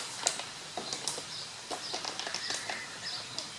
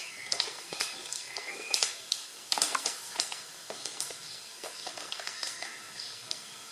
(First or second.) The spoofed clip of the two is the second